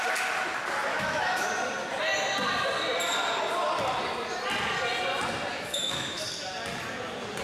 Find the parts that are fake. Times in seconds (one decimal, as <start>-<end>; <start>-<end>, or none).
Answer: 0.9-1.5; 5.5-6.2

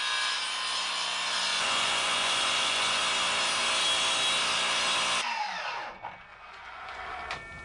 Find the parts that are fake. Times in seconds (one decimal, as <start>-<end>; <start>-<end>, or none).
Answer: 1.5-3.0; 6.3-7.0

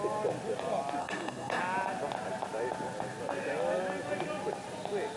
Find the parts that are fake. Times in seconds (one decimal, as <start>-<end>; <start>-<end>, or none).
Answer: 1.0-1.6

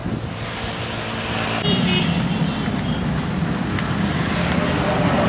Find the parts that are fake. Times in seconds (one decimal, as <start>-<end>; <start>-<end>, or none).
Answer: none

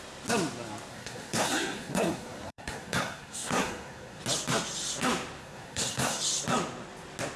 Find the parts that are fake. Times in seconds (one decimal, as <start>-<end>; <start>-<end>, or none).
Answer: 0.9-4.2; 5.4-6.2

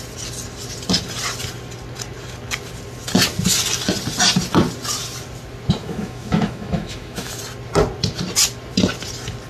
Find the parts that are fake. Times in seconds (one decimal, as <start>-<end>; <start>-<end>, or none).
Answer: 5.8-7.4

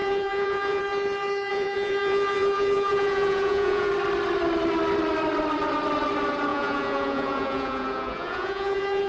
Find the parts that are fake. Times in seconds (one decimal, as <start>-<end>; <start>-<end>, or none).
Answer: 0.0-0.8; 1.5-3.9; 6.5-9.1